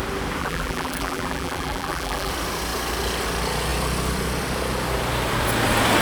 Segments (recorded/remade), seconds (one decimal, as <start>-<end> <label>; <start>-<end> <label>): 0.0-0.4 recorded; 0.4-2.3 remade; 2.3-6.0 recorded